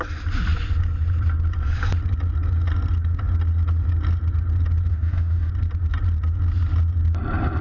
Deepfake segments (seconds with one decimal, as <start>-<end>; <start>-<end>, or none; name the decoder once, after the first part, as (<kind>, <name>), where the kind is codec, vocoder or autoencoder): 4.9-5.5 (autoencoder, DAC-VAE)